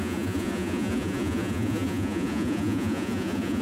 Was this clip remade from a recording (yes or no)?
yes